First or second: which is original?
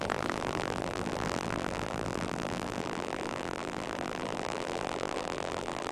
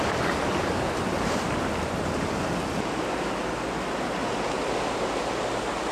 second